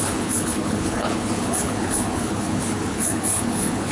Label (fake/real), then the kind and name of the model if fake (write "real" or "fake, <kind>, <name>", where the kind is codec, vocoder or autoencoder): fake, codec, HILCodec